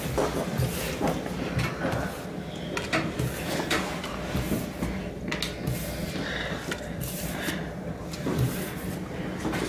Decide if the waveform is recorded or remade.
recorded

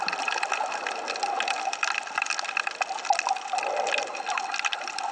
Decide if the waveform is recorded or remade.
recorded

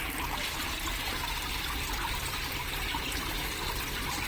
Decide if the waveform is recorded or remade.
recorded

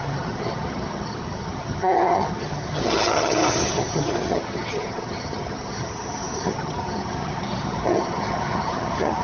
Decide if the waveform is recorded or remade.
remade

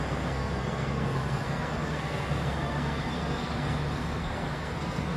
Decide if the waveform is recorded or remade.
remade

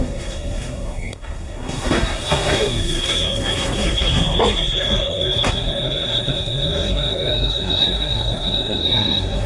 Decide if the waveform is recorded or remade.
remade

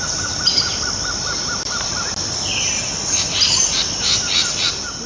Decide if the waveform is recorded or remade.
recorded